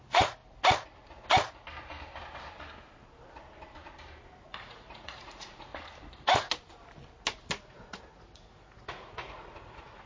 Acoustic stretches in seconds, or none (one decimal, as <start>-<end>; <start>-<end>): 0.4-4.4; 5.7-7.6

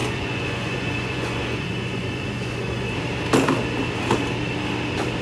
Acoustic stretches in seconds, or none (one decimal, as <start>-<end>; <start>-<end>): 2.9-5.2